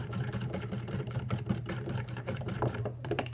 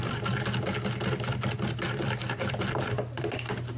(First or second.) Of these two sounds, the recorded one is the second